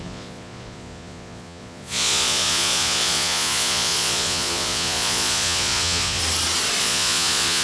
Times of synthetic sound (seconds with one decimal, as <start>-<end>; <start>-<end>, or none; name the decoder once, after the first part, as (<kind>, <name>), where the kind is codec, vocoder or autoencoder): 0.0-6.2 (vocoder, Vocos); 6.8-7.6